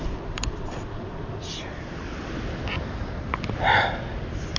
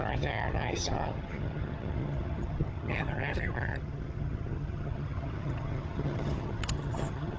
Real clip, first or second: first